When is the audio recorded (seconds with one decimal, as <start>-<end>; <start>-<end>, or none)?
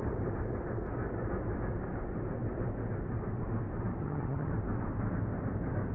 0.0-4.0; 4.5-5.9